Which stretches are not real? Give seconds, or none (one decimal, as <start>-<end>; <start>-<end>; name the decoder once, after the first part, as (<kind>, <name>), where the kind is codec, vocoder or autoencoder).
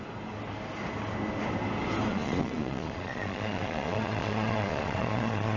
2.1-5.6 (vocoder, Vocos)